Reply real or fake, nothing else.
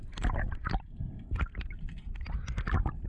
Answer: real